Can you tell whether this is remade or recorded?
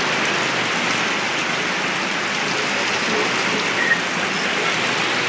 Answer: recorded